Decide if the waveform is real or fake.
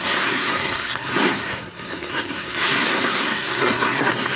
fake